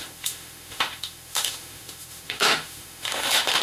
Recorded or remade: remade